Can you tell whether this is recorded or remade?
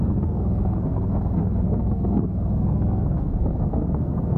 remade